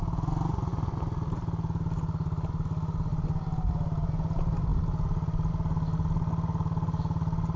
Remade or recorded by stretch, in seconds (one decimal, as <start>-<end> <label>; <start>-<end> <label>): 0.0-3.1 recorded; 3.1-4.1 remade; 4.1-7.6 recorded